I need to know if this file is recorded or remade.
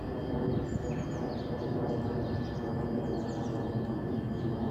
recorded